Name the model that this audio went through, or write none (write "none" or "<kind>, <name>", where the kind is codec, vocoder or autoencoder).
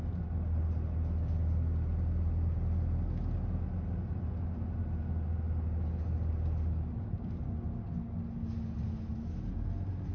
none